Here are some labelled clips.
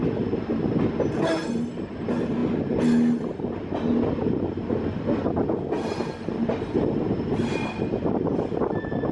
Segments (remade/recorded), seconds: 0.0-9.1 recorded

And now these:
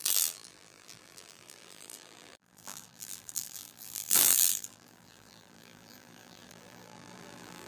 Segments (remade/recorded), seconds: 0.0-7.7 remade

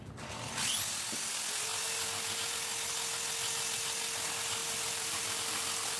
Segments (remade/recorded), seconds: 0.0-4.6 recorded; 4.6-6.0 remade